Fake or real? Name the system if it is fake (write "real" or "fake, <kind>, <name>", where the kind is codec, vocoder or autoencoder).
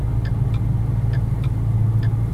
real